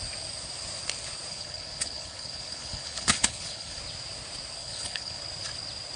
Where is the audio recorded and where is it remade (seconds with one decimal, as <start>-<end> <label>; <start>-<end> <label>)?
0.0-1.3 recorded; 1.3-3.8 remade; 3.8-4.6 recorded; 4.6-5.2 remade; 5.2-6.0 recorded